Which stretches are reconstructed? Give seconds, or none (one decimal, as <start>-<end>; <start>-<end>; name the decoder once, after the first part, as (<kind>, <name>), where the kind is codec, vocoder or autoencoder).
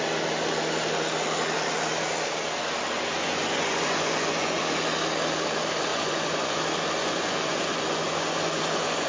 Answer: 3.2-4.6 (vocoder, Vocos); 5.9-6.6; 7.0-9.1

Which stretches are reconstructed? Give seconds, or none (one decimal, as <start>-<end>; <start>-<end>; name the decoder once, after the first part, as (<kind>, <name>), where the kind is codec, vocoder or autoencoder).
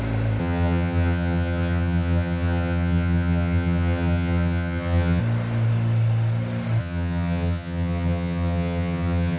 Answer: 0.4-5.2 (vocoder, HiFi-GAN); 6.8-9.4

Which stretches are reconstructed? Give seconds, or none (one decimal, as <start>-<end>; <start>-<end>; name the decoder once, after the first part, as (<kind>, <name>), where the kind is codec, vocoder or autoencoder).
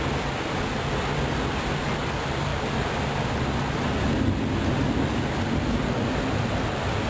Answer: none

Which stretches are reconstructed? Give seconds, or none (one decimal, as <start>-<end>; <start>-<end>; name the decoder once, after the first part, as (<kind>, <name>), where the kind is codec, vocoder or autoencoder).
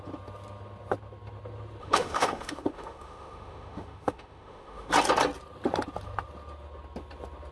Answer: 1.8-4.9 (autoencoder, DAC-VAE)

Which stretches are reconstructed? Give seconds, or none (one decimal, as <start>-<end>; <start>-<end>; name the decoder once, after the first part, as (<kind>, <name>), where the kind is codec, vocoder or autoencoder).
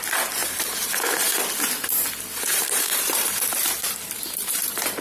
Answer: 0.4-1.4 (vocoder, BigVGAN v2); 2.5-5.0